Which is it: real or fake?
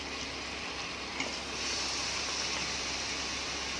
real